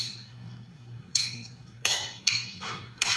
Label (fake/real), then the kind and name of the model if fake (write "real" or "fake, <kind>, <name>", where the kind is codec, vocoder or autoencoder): fake, codec, SNAC